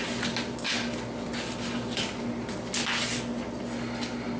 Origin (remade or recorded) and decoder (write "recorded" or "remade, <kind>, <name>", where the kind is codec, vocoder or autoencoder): recorded